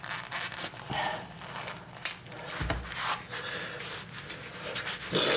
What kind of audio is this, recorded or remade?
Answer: recorded